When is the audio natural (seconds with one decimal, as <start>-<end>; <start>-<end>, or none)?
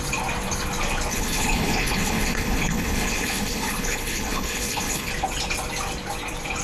0.0-1.1; 5.1-6.6